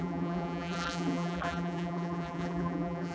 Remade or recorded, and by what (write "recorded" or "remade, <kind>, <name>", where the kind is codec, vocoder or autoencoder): remade, vocoder, BigVGAN v2